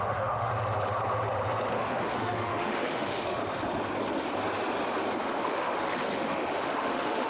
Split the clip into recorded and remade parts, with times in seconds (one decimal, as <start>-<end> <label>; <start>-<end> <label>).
0.0-0.5 remade; 0.5-1.7 recorded; 1.7-3.4 remade; 3.4-5.2 recorded; 5.2-7.3 remade